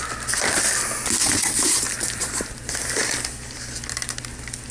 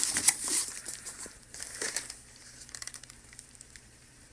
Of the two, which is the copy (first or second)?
second